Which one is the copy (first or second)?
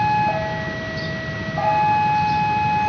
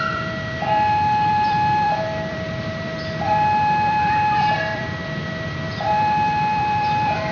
second